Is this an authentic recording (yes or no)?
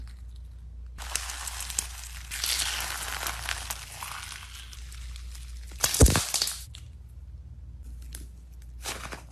yes